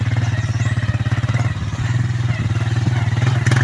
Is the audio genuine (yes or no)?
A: yes